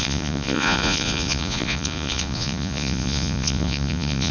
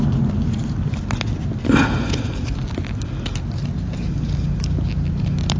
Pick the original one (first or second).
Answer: second